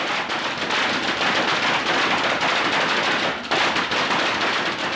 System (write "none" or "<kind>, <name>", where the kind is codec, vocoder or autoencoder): none